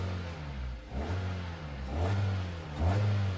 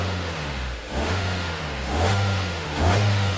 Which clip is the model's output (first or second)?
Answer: second